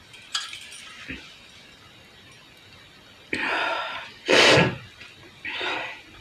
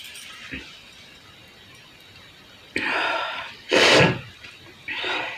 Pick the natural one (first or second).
first